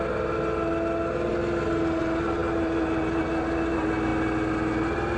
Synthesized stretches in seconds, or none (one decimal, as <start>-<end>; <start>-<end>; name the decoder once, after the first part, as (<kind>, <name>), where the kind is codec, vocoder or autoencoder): none